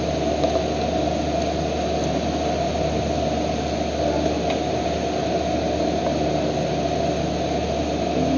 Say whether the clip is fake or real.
real